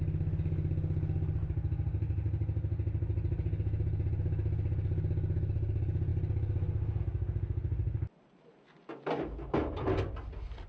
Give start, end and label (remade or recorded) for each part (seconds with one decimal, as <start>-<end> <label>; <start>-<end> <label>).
0.0-10.7 recorded